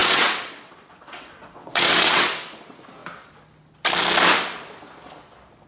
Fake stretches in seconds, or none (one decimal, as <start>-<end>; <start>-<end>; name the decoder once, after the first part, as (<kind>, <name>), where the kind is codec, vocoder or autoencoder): 0.0-2.3 (vocoder, WaveNeXt)